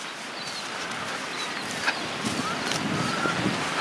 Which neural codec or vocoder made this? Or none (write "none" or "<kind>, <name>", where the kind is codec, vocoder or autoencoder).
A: none